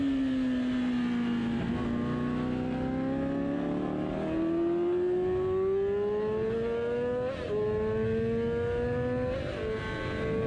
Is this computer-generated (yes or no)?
no